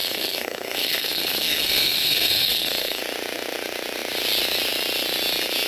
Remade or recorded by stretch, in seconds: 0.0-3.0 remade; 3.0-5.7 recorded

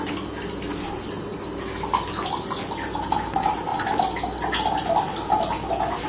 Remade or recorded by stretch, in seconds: 0.0-6.1 recorded